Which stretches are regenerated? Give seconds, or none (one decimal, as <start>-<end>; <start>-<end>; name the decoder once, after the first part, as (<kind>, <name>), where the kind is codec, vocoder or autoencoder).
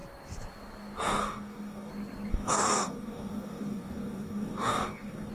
1.2-1.9 (codec, DAC); 2.3-5.3